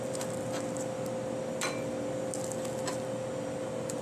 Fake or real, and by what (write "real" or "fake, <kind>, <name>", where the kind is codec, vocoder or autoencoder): real